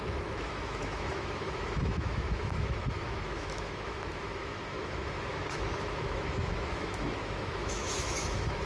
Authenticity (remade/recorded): remade